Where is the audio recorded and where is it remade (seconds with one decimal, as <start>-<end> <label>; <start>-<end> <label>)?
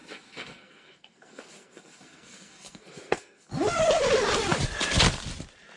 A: 0.0-3.5 remade; 3.5-5.8 recorded